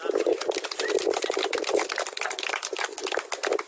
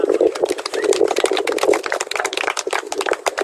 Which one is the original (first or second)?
first